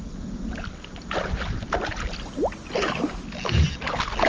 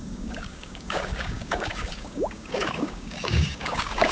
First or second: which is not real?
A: second